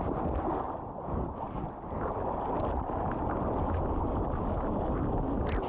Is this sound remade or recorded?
recorded